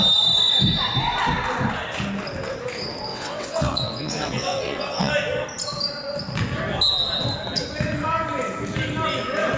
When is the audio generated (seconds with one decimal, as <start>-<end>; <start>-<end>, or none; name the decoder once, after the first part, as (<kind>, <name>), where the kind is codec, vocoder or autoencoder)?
3.1-5.1 (vocoder, WaveNeXt)

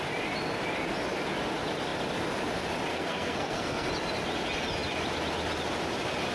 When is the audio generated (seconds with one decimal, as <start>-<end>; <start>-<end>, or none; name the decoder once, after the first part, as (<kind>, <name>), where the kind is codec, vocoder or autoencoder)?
2.9-3.9 (codec, SNAC)

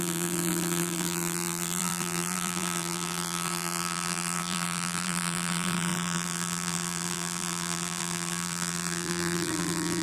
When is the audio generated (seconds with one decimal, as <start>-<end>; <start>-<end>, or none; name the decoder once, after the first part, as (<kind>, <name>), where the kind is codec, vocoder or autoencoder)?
0.0-10.0 (vocoder, BigVGAN v2)

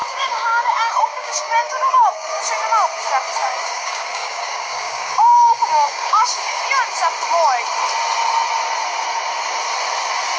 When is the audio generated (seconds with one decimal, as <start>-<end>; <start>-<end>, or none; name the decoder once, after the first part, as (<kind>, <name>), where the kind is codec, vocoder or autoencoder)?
0.0-2.4 (codec, DAC); 3.4-6.6